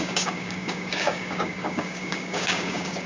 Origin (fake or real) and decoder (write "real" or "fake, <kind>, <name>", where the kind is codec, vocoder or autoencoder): fake, codec, DAC